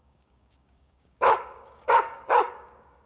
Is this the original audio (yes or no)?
no